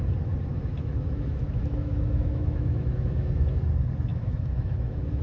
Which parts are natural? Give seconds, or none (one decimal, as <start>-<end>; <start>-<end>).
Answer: 0.0-0.5; 3.6-4.1